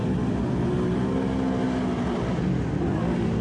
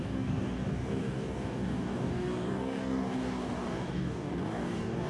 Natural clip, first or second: first